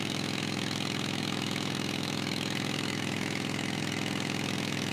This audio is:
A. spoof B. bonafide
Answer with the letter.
A